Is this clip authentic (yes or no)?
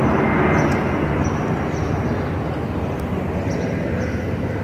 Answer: yes